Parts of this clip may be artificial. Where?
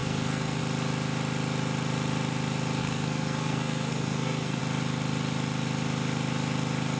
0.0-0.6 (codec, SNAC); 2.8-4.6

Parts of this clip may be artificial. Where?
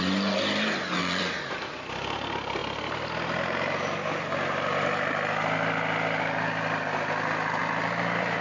1.0-1.7 (vocoder, BigVGAN v2); 7.6-8.4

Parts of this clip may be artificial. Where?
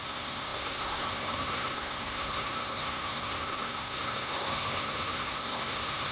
0.0-6.1 (codec, SNAC)